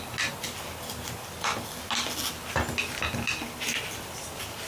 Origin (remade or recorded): recorded